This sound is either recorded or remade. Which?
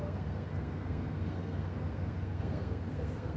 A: remade